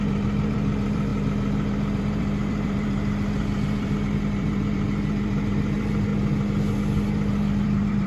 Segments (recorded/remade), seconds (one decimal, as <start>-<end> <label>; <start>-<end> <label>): 0.0-1.1 remade; 1.1-2.0 recorded; 2.0-6.1 remade; 6.1-7.1 recorded; 7.1-8.1 remade

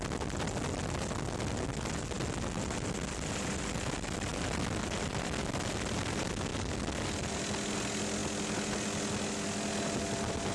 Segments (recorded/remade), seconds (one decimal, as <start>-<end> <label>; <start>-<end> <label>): 0.0-10.5 recorded

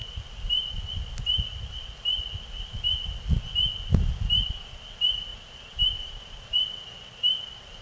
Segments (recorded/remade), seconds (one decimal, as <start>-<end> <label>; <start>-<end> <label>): 0.0-5.3 recorded; 5.3-6.9 remade; 6.9-7.8 recorded

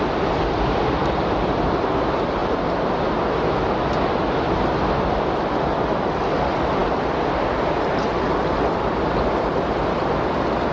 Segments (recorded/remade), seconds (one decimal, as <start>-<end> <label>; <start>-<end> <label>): 0.0-2.4 remade; 2.4-5.1 recorded; 5.1-10.7 remade